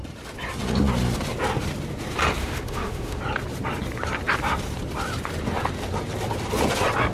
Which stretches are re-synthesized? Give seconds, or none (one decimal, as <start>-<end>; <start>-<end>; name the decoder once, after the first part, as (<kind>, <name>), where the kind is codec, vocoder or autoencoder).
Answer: 2.4-3.2 (autoencoder, DAC-VAE)